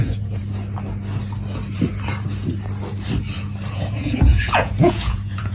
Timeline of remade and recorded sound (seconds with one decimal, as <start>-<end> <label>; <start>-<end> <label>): 0.0-0.4 remade; 0.4-3.7 recorded; 3.7-5.5 remade